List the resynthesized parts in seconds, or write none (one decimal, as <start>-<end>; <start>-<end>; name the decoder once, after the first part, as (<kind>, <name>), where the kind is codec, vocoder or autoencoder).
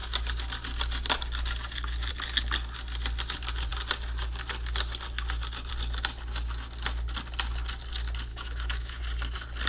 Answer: 8.3-9.0 (autoencoder, DAC-VAE)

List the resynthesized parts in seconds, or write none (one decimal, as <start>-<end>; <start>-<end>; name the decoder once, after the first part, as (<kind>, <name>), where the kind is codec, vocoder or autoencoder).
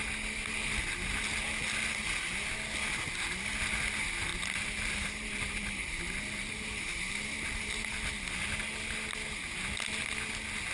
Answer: 4.3-8.1 (vocoder, BigVGAN v2)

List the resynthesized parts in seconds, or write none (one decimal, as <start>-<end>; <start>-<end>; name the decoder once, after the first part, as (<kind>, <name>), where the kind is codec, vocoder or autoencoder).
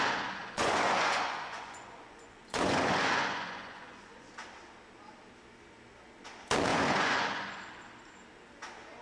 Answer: 0.4-4.3 (vocoder, Vocos); 6.7-7.6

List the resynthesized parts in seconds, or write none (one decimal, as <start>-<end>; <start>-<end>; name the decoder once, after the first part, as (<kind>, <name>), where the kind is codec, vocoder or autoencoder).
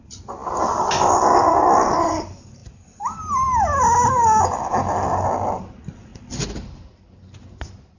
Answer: none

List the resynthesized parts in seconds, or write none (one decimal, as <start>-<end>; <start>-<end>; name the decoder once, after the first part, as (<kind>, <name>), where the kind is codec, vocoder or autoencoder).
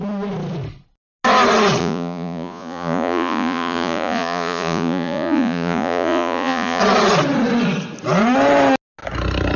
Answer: 1.8-6.8 (vocoder, Vocos)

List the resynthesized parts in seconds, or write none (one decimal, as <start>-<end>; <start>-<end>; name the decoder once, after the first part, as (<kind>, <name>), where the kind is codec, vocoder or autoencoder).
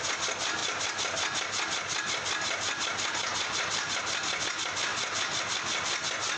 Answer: none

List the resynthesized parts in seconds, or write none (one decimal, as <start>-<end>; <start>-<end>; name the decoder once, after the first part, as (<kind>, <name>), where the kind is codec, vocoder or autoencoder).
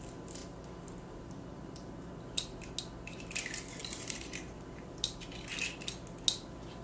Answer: 0.4-2.1 (vocoder, BigVGAN v2); 3.8-4.9